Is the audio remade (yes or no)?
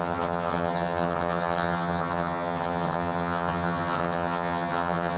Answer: yes